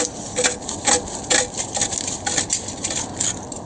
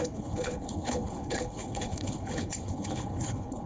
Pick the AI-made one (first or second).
second